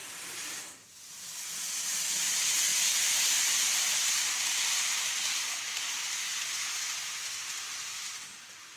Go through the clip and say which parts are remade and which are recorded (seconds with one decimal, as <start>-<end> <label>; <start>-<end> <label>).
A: 0.0-1.1 remade; 1.1-2.7 recorded; 2.7-5.2 remade; 5.2-8.8 recorded